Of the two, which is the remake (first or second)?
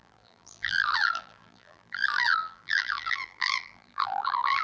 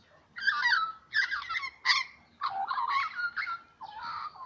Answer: first